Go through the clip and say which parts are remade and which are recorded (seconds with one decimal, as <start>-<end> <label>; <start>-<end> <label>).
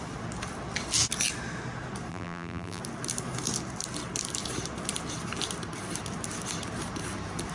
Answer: 0.0-2.1 recorded; 2.1-2.8 remade; 2.8-7.5 recorded